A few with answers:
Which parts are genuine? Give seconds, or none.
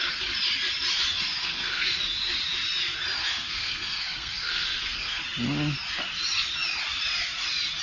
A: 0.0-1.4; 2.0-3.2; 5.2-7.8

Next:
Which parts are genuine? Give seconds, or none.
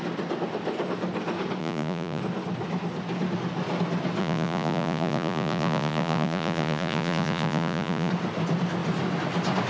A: 0.0-1.6; 2.2-4.2; 8.1-9.7